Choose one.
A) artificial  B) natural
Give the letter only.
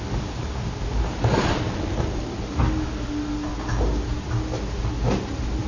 B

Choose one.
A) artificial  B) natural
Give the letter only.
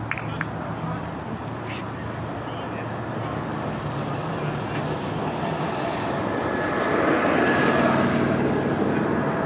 B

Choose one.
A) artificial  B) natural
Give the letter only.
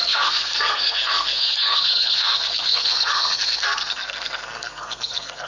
A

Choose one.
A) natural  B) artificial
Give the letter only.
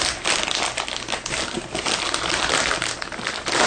A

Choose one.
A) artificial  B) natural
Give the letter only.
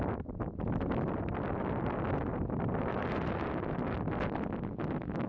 B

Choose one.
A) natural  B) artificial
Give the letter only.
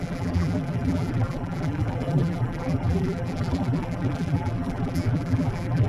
B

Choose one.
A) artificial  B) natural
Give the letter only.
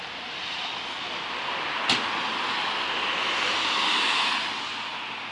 B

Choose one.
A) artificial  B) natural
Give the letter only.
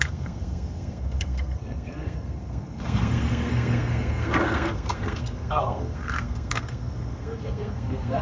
A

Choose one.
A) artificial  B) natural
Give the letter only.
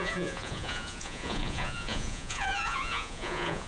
A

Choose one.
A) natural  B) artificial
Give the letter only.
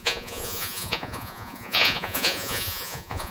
B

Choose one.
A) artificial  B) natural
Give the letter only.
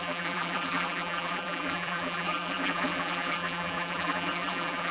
A